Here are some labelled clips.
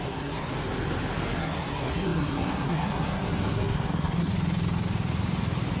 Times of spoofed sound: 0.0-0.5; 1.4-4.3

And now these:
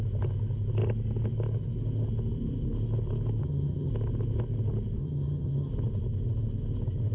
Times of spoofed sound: 3.4-3.9; 5.0-5.7

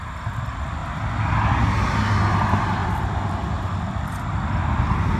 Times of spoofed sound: none

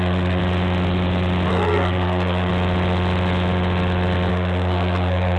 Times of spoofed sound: 0.0-0.4; 1.5-2.5; 4.3-5.4

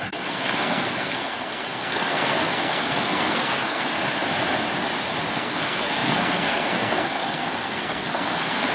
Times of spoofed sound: 0.0-4.0; 5.3-8.7

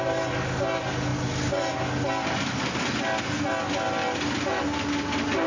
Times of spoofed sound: none

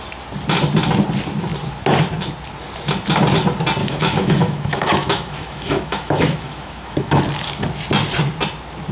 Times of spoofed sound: 3.8-7.2

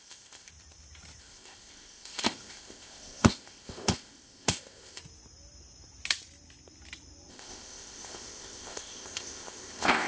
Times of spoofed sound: 0.0-0.5; 1.2-5.0; 7.3-10.1